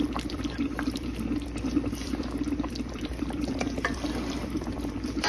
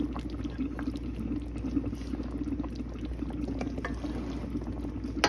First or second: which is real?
second